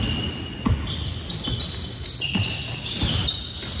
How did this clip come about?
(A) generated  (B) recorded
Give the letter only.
B